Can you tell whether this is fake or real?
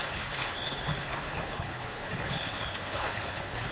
fake